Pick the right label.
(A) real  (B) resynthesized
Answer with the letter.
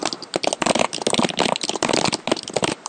A